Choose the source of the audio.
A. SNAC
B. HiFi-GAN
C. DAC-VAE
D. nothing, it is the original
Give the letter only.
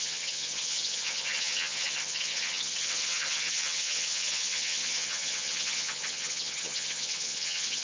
B